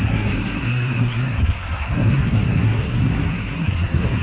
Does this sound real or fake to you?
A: fake